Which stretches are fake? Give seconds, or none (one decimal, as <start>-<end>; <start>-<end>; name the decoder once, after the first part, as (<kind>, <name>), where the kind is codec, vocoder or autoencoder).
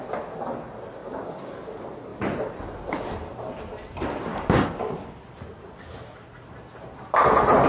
1.0-1.5 (codec, DAC); 4.3-5.1